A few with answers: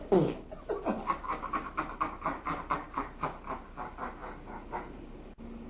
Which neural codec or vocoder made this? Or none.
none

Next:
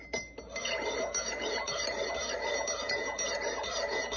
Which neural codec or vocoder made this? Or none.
none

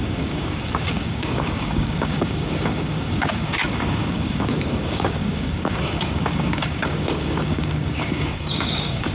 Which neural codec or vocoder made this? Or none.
codec, DAC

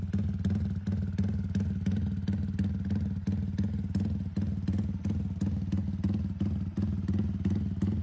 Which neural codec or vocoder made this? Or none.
none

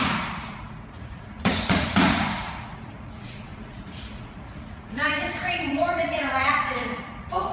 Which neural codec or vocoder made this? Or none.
vocoder, Vocos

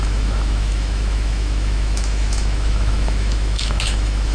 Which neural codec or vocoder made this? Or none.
autoencoder, DAC-VAE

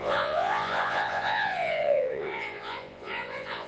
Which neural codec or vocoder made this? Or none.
vocoder, Vocos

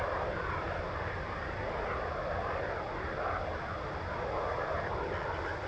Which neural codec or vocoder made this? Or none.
none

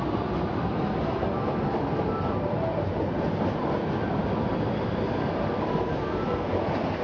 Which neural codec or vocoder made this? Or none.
none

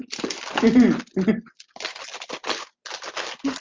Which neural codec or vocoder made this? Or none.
none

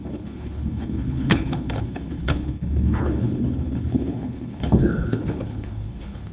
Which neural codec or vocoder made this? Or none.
codec, HILCodec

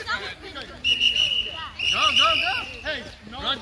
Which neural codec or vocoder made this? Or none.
none